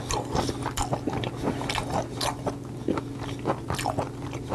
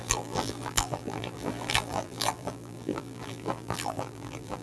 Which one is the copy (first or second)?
second